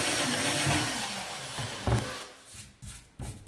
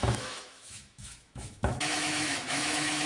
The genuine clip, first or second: first